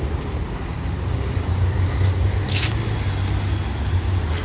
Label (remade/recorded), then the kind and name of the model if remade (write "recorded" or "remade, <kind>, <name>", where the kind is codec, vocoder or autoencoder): recorded